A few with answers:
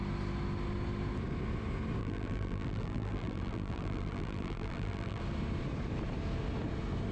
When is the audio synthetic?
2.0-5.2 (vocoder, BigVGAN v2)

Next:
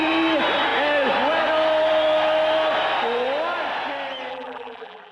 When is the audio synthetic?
4.3-5.1 (vocoder, BigVGAN v2)